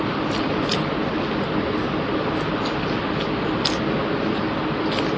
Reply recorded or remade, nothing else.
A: recorded